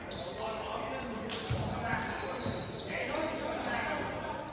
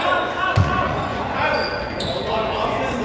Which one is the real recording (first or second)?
first